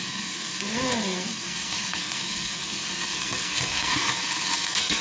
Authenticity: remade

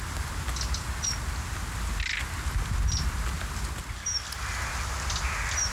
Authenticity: recorded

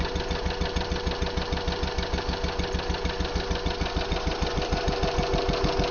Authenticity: recorded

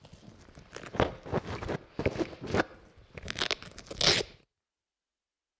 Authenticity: recorded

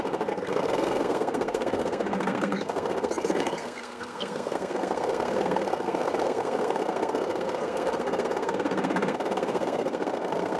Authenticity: remade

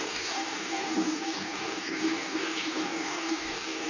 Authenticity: remade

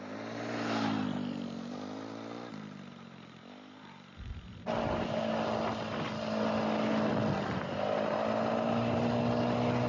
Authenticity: recorded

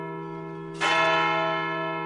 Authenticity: recorded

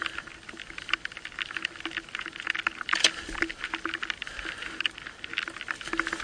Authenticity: recorded